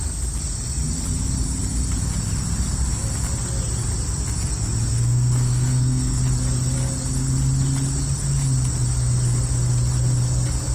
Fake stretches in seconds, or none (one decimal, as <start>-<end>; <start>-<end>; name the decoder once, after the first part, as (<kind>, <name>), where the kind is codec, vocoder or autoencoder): 4.9-6.2 (codec, SNAC)